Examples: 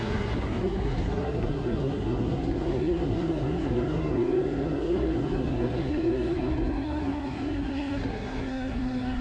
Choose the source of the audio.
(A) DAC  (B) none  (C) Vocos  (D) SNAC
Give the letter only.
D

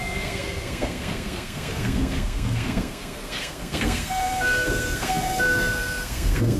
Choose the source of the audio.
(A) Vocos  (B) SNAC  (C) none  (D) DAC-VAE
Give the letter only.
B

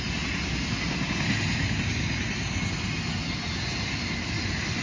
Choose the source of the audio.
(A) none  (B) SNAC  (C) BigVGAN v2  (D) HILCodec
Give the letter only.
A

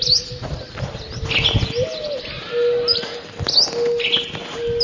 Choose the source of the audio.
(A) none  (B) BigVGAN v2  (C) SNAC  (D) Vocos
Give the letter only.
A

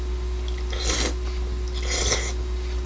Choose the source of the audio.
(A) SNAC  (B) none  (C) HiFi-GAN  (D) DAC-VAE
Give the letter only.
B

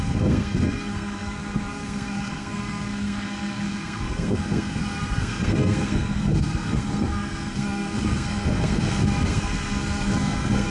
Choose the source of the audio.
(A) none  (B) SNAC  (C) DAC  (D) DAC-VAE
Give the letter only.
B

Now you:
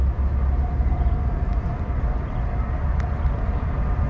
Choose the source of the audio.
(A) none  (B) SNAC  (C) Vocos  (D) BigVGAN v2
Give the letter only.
A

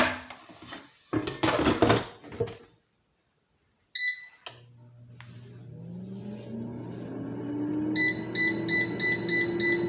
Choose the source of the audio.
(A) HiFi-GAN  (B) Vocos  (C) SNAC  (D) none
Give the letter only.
D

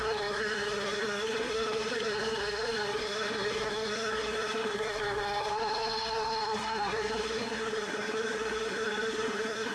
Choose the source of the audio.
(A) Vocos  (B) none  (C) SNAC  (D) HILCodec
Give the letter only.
C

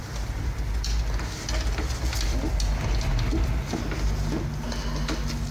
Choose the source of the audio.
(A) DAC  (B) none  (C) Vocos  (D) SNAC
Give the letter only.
B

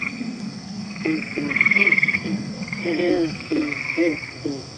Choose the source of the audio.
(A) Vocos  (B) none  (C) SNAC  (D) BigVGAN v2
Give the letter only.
C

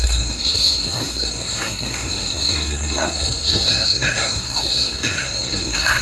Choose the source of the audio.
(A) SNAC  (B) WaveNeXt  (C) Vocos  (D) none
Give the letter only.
A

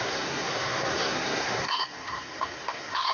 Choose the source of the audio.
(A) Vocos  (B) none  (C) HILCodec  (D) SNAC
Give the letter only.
D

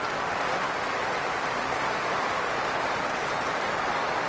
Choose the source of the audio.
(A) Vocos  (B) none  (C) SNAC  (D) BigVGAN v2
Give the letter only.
B